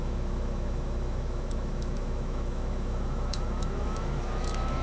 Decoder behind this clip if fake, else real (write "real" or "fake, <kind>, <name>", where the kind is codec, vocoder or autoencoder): fake, autoencoder, DAC-VAE